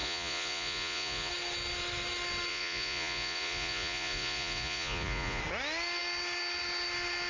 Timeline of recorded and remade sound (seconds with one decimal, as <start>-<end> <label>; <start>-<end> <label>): 0.0-1.3 remade; 1.3-2.5 recorded; 2.5-5.4 remade; 5.4-7.3 recorded